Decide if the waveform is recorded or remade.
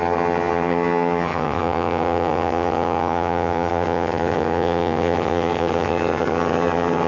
remade